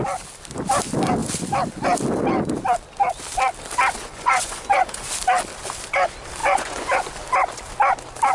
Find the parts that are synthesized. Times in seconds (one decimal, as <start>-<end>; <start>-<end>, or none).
4.0-5.1; 6.4-7.1